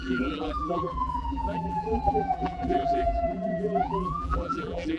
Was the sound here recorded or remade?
remade